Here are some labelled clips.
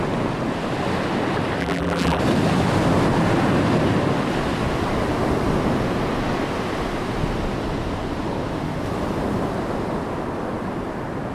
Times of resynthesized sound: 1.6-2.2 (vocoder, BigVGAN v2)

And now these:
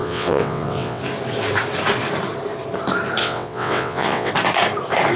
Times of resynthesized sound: 0.0-1.0 (vocoder, WaveNeXt); 3.2-4.3